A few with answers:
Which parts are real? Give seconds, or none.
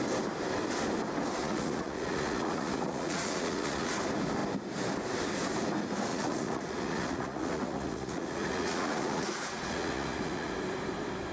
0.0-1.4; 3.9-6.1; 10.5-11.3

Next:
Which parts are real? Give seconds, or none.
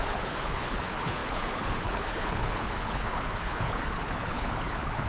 none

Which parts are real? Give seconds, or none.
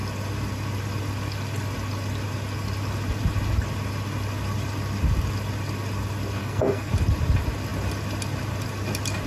0.0-6.4; 6.9-9.3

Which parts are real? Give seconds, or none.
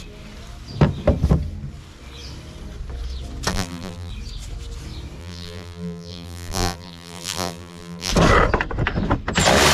0.0-3.5; 4.1-5.2; 8.1-9.7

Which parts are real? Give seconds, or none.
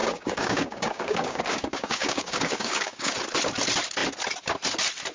3.1-5.1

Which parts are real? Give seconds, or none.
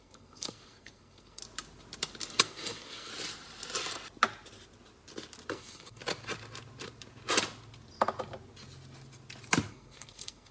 1.4-2.4; 3.1-5.5; 6.0-9.7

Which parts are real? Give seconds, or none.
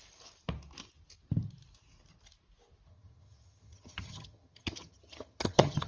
0.0-2.9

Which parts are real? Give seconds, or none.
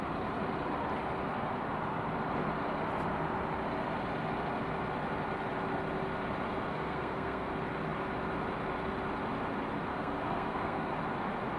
0.0-6.7; 7.5-9.9; 10.9-11.6